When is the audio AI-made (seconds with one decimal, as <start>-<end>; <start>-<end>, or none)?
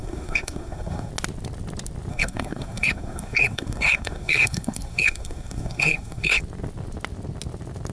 0.0-1.1; 2.1-6.4